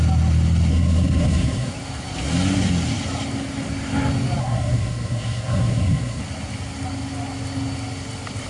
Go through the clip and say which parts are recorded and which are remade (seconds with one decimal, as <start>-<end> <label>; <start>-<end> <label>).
0.0-0.7 recorded; 0.7-1.7 remade; 1.7-4.4 recorded; 4.4-6.2 remade; 6.2-8.5 recorded